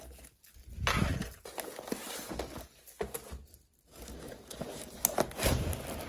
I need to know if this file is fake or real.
real